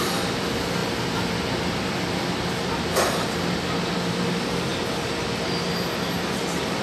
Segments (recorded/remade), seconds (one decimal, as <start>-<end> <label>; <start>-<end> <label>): 0.0-6.8 recorded